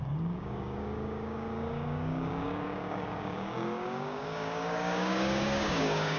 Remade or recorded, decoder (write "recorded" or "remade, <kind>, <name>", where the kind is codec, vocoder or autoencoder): remade, codec, DAC